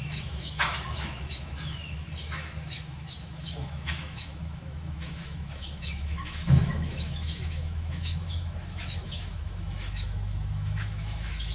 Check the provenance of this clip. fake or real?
fake